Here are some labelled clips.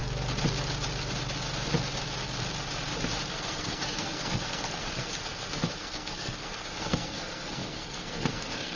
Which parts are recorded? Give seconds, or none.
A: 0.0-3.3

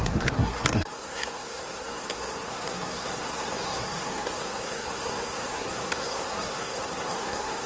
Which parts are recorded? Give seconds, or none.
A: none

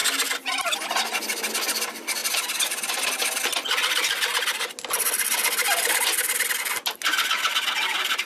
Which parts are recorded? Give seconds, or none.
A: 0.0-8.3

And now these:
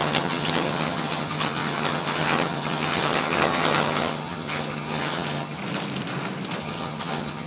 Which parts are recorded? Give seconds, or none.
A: 5.6-6.6

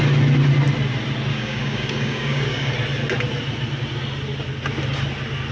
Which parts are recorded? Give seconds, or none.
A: 0.0-1.3; 2.7-5.5